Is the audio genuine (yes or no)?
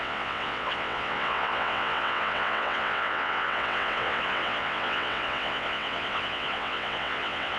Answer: no